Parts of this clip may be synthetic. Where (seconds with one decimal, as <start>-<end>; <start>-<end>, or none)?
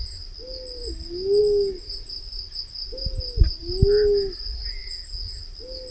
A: 4.8-5.4